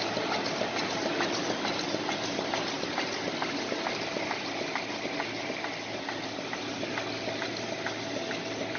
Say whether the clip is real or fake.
real